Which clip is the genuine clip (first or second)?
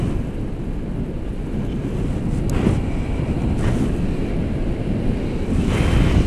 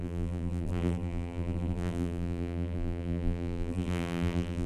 first